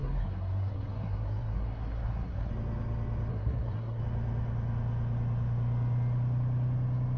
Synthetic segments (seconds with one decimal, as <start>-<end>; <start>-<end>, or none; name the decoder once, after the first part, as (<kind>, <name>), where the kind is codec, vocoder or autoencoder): 0.0-2.5 (codec, SNAC); 3.3-4.0